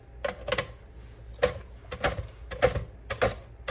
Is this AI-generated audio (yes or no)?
no